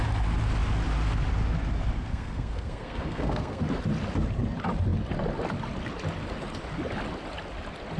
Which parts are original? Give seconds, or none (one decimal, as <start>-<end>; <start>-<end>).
0.0-2.1; 3.6-8.0